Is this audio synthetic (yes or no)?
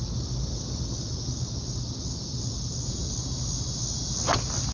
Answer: no